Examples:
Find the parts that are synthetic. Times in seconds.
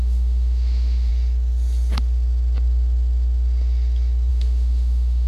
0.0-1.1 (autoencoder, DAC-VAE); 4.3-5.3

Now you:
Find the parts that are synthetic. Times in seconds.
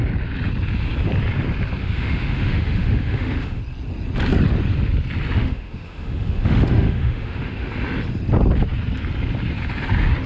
1.8-3.6 (autoencoder, DAC-VAE); 5.4-7.7